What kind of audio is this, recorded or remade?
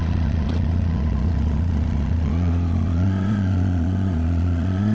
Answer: remade